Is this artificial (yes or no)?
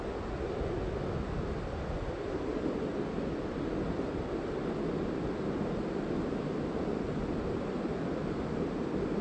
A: no